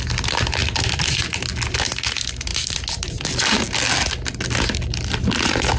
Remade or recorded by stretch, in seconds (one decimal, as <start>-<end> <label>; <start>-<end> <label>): 0.0-5.8 recorded